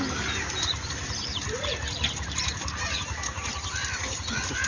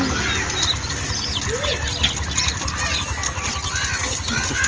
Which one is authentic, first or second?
second